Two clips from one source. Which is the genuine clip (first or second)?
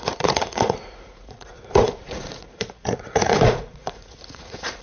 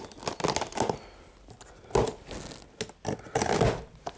second